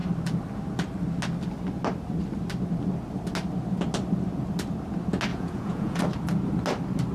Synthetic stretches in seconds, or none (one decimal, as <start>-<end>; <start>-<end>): 5.3-6.0